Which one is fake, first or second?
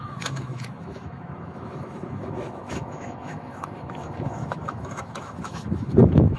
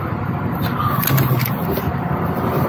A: first